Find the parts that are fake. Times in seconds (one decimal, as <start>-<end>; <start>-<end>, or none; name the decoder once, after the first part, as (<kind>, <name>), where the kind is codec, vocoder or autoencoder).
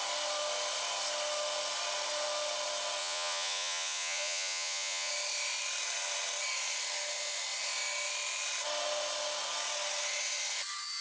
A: 3.0-5.1 (vocoder, Vocos)